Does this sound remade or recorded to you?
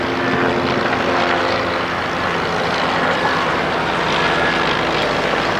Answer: recorded